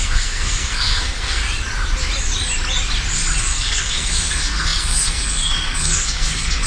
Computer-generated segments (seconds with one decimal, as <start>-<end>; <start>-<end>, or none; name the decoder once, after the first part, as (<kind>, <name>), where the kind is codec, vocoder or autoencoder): 0.0-1.4 (codec, SNAC); 3.4-6.7